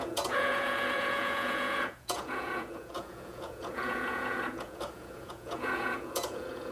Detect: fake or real fake